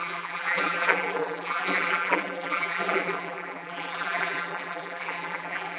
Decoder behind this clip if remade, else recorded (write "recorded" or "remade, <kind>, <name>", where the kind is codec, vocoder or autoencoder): remade, vocoder, BigVGAN v2